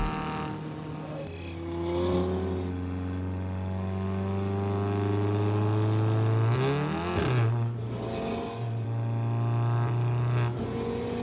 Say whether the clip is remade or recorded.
recorded